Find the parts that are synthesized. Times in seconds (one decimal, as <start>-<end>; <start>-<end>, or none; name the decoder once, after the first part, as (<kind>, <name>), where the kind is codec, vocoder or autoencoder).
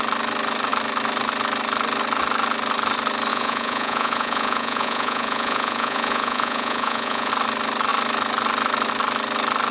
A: 3.3-7.3 (vocoder, Vocos)